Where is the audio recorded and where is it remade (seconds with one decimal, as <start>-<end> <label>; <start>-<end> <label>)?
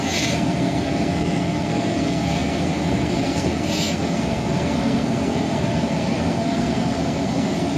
0.0-7.8 remade